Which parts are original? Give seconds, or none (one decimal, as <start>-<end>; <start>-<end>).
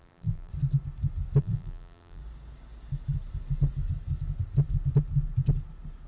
0.5-1.4; 2.2-6.1